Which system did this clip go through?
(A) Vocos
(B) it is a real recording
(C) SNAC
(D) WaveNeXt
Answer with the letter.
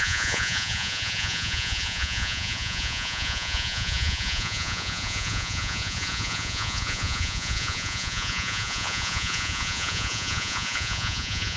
A